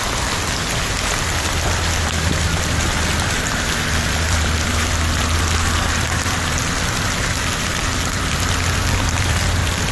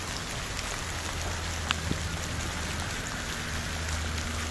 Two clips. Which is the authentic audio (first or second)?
second